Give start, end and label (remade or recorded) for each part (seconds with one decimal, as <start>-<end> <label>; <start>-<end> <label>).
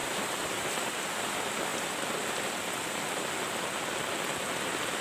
0.0-0.7 remade; 0.7-5.0 recorded